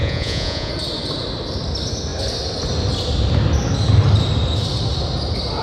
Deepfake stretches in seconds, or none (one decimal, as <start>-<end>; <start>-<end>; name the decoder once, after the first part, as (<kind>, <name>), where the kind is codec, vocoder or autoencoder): 0.0-0.7 (vocoder, Vocos)

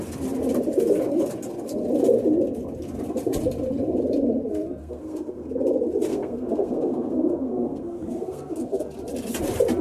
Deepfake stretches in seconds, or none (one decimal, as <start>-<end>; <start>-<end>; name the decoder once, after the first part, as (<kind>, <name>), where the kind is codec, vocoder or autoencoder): 4.8-5.5 (codec, SNAC); 6.1-8.8